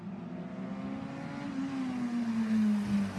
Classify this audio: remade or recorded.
recorded